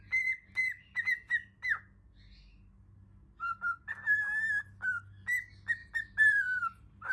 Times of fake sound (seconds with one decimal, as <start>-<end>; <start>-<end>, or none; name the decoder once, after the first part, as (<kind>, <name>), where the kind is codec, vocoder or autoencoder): 5.8-7.1 (vocoder, BigVGAN v2)